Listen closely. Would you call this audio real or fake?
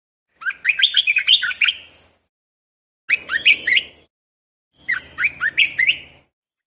real